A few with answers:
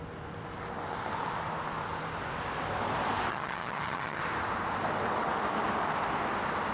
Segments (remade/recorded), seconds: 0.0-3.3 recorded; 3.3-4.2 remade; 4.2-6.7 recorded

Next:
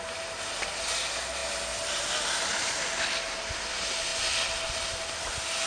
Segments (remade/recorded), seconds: 0.0-5.7 recorded